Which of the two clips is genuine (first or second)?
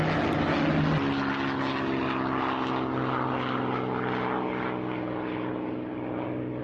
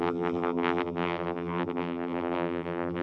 first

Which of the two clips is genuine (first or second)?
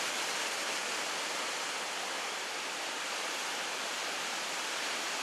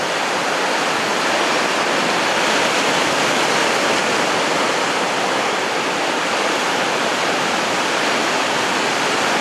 second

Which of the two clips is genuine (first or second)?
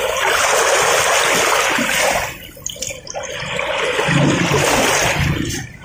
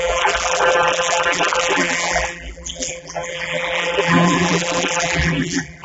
first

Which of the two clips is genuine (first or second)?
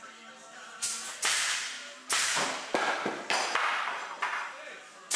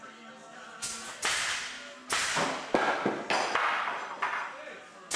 second